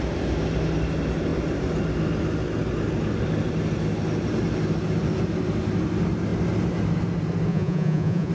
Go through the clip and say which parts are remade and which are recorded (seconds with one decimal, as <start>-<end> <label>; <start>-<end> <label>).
0.0-7.5 recorded; 7.5-8.3 remade